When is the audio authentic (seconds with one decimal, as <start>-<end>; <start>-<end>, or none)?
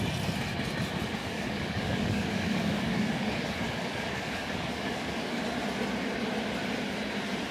0.0-1.2; 5.4-7.5